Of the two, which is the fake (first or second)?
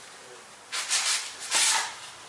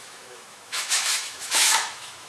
second